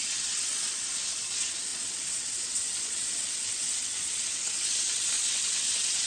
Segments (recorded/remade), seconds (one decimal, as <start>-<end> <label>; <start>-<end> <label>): 0.0-6.1 remade